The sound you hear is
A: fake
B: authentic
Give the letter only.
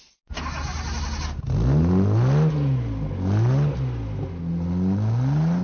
B